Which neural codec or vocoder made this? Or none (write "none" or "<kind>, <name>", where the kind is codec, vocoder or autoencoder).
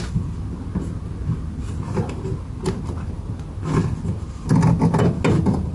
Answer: none